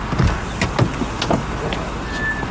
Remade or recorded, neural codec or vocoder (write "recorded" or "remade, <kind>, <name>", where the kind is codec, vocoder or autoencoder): recorded